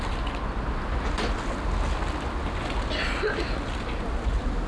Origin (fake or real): real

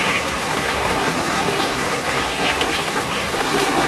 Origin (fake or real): fake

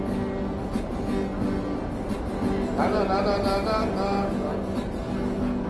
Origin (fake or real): real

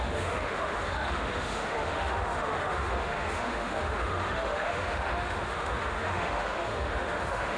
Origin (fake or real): fake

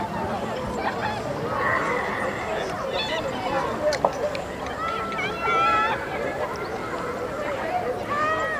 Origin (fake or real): real